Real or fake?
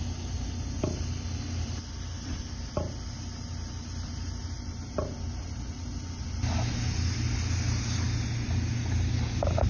real